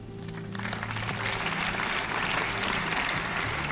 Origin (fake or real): real